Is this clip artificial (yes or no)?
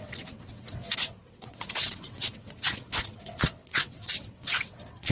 yes